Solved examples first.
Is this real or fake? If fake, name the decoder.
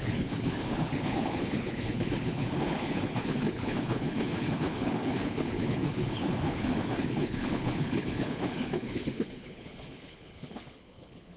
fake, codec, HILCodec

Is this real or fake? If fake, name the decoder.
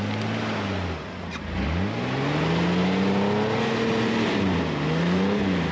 real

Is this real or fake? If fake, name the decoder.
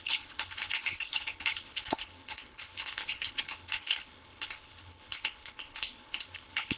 fake, codec, HILCodec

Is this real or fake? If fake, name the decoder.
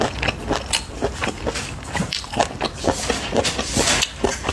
real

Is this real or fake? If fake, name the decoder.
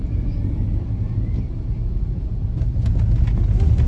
real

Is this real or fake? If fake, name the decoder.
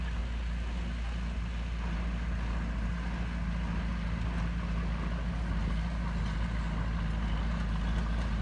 real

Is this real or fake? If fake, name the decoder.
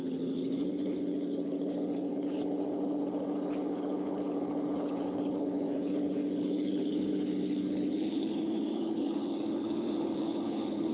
fake, codec, HILCodec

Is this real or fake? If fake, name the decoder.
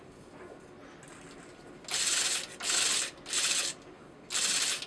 real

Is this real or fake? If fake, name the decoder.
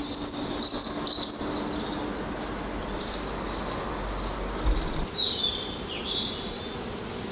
real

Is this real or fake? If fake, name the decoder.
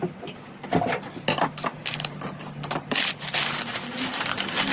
real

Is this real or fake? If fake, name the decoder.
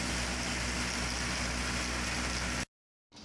real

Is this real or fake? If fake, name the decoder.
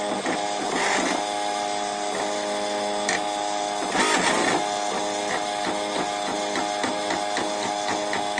real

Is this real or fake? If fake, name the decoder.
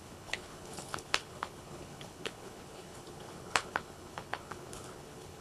fake, codec, HILCodec